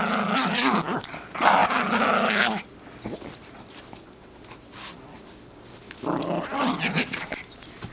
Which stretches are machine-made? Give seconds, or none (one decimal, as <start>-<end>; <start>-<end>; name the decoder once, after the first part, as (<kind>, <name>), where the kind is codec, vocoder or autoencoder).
none